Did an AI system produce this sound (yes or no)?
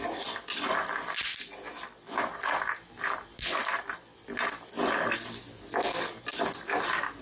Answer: no